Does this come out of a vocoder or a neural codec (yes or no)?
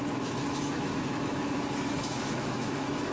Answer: yes